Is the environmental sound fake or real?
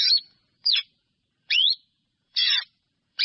fake